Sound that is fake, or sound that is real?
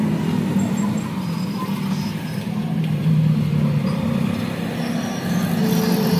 real